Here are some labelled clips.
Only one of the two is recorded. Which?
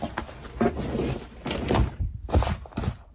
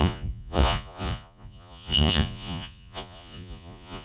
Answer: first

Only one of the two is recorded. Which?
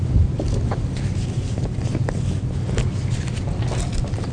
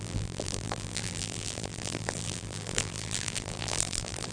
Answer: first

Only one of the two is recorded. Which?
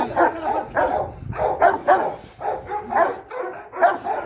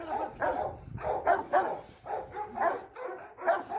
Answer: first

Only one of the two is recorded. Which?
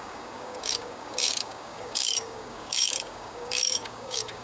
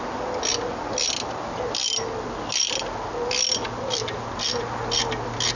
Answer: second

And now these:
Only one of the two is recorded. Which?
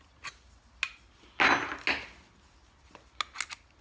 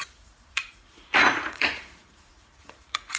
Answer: first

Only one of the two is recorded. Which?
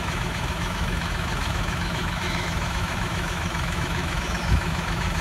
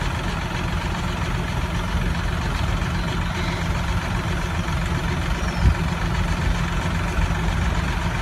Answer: second